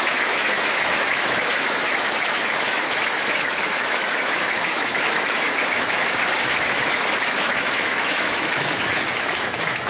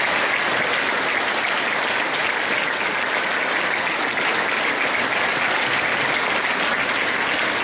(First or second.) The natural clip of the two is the second